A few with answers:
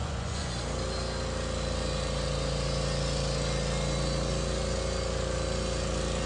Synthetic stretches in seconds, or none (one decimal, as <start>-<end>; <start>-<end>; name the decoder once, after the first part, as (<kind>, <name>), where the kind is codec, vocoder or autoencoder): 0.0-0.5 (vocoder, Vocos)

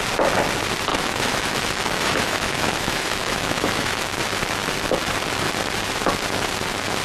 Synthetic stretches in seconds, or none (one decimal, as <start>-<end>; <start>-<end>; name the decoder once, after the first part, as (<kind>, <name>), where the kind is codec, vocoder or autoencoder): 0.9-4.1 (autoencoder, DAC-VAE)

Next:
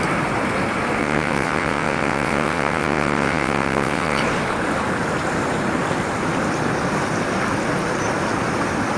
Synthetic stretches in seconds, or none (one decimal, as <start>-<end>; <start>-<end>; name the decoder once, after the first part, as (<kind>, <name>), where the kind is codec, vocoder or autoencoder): 1.0-4.2 (vocoder, WaveNeXt)

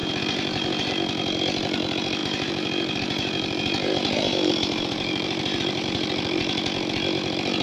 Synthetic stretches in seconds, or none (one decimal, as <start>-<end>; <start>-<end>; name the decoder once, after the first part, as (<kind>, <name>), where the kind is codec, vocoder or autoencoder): 0.0-0.9 (vocoder, BigVGAN v2); 2.2-6.4

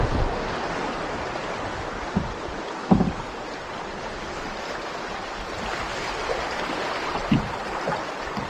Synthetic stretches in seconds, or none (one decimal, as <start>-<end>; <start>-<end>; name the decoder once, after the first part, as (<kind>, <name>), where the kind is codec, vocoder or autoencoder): none

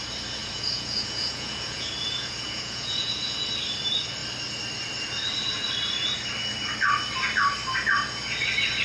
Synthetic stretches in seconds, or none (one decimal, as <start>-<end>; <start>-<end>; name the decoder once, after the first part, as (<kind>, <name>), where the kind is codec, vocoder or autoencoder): 0.4-3.5 (vocoder, Vocos)

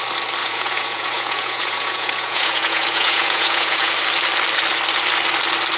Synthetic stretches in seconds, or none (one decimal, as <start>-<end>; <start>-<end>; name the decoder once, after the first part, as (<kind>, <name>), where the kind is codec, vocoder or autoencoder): 0.4-3.9 (vocoder, Vocos)

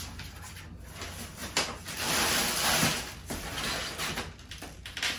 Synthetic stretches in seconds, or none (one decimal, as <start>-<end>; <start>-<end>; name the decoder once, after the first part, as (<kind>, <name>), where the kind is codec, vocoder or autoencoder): none